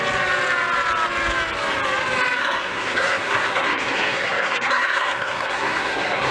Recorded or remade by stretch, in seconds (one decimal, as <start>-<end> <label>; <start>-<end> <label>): 0.0-2.4 recorded; 2.4-6.3 remade